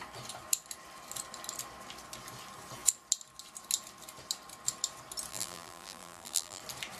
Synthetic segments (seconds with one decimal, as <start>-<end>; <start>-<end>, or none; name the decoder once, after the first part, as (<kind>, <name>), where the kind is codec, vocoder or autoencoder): 5.3-6.6 (vocoder, BigVGAN v2)